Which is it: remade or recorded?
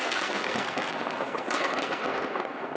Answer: remade